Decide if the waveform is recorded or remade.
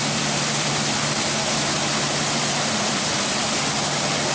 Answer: recorded